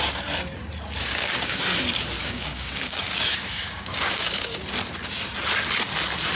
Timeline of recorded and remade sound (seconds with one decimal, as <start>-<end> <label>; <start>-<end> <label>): 0.0-1.0 recorded; 1.0-1.6 remade; 1.6-2.2 recorded; 2.2-4.6 remade; 4.6-6.4 recorded